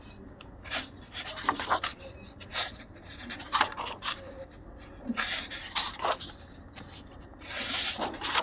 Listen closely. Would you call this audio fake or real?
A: fake